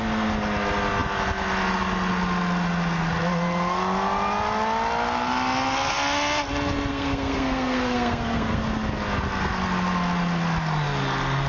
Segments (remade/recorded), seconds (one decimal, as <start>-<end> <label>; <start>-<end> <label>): 0.0-6.9 recorded; 6.9-8.6 remade; 8.6-11.5 recorded